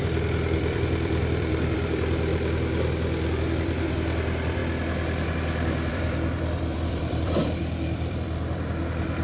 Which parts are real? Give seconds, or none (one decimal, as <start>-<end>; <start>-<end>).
2.3-3.4; 4.6-5.9